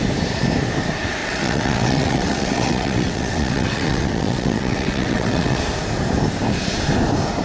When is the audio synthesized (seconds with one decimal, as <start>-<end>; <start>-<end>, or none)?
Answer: 1.2-5.6